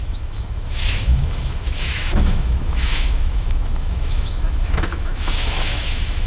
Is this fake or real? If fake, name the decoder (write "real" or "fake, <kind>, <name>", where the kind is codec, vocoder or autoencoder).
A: fake, autoencoder, DAC-VAE